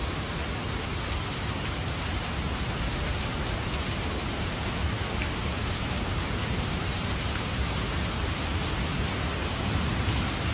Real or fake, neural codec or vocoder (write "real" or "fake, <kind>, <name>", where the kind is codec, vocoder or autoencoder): real